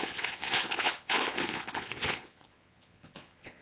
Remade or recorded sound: remade